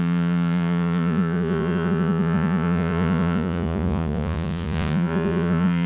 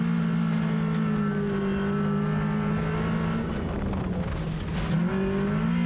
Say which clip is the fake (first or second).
first